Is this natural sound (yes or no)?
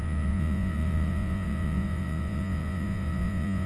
no